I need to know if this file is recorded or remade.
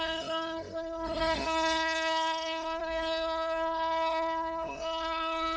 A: remade